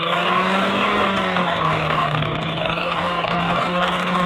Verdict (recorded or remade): remade